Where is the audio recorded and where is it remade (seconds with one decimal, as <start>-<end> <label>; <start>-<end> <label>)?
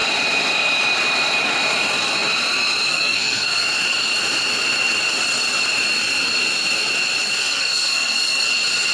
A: 0.0-2.9 recorded; 2.9-3.6 remade; 3.6-7.4 recorded; 7.4-8.5 remade; 8.5-8.9 recorded